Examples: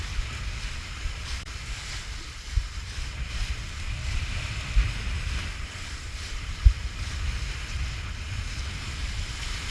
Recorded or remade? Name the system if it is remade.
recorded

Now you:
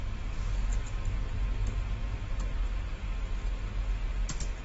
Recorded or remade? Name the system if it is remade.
recorded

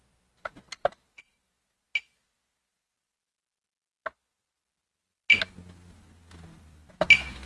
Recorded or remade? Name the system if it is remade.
recorded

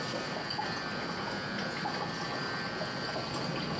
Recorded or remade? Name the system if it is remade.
recorded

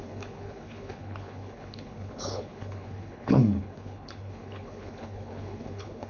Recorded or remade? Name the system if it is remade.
remade, codec, HILCodec